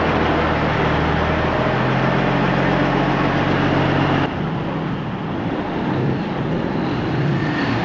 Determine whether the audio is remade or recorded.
recorded